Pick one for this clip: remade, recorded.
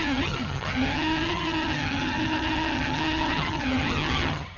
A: remade